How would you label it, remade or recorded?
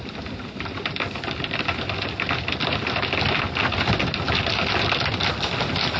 recorded